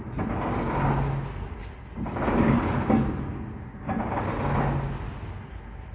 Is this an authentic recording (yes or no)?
yes